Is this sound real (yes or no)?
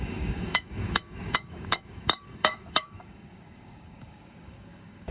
no